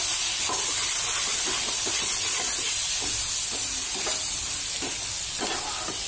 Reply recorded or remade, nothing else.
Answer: recorded